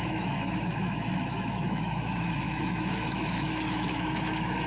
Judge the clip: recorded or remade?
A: remade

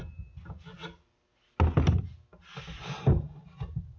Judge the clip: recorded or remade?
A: recorded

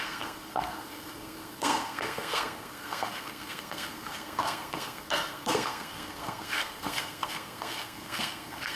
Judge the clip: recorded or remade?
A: remade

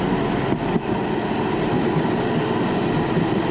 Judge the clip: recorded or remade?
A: recorded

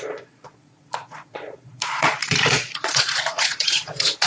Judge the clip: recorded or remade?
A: remade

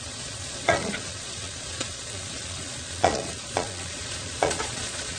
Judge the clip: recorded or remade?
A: remade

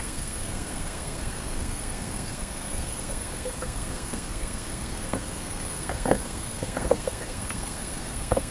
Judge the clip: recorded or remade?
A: remade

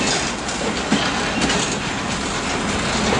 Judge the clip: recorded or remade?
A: recorded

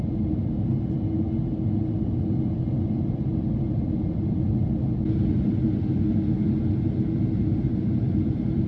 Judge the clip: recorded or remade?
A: recorded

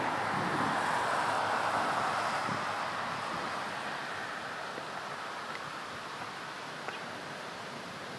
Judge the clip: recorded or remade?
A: recorded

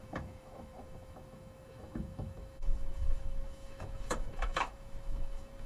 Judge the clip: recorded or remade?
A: remade